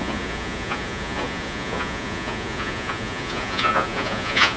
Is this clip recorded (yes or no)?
no